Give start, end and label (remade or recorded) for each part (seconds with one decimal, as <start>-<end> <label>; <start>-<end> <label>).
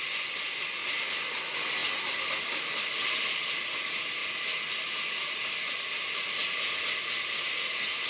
0.0-0.8 remade; 0.8-1.4 recorded; 1.4-4.2 remade; 4.2-8.1 recorded